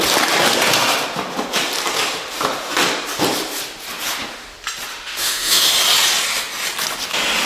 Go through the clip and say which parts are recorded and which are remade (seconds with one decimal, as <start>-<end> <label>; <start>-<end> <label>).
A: 0.0-4.9 recorded; 4.9-5.7 remade; 5.7-7.5 recorded